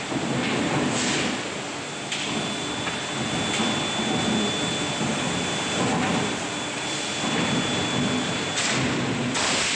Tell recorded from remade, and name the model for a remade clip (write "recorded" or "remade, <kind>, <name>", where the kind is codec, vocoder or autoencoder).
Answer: recorded